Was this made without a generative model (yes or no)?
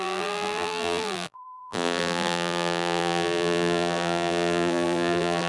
no